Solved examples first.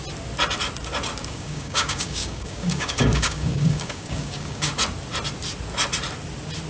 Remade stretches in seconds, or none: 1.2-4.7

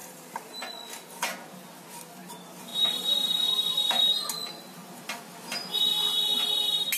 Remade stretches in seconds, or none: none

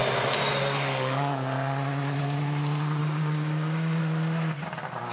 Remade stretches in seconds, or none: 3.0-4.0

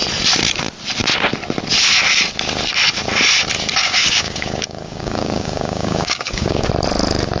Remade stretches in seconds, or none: 3.8-6.7